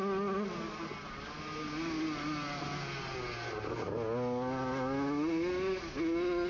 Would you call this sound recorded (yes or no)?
yes